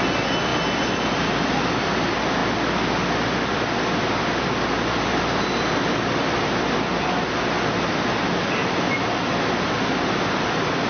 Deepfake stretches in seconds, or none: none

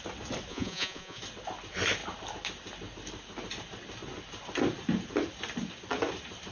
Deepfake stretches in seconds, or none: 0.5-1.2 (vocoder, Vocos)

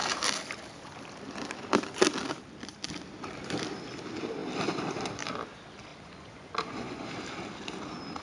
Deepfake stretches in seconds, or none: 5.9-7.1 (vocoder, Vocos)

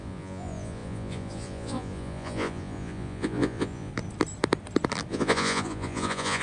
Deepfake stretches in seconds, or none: 0.0-3.9 (vocoder, Vocos); 5.1-6.4

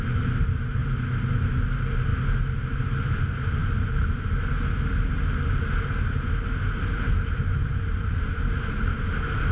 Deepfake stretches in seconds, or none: none